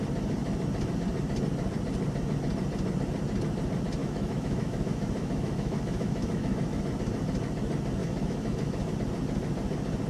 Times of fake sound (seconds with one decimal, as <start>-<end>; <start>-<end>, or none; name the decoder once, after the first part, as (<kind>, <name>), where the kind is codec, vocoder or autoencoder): 4.0-6.8 (autoencoder, DAC-VAE); 8.0-8.9